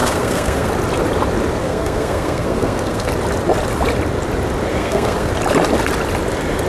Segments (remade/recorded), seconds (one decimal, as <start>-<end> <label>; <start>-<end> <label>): 0.0-0.7 remade; 0.7-1.6 recorded; 1.6-3.1 remade; 3.1-4.7 recorded; 4.7-5.3 remade; 5.3-6.7 recorded